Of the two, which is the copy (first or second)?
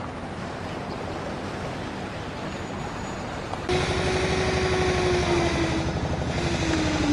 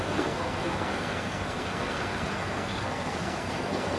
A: second